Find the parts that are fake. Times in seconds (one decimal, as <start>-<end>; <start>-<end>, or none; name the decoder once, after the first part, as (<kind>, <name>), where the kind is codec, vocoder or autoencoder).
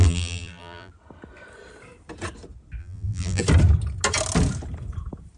0.0-0.9 (vocoder, BigVGAN v2); 2.8-3.4